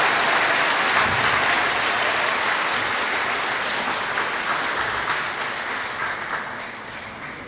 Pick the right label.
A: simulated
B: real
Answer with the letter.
B